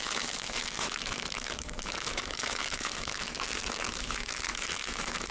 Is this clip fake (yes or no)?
yes